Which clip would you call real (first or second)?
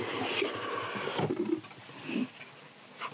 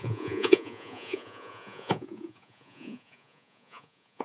first